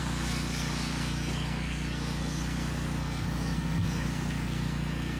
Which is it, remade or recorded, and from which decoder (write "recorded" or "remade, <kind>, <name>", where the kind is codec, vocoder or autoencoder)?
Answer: remade, codec, SNAC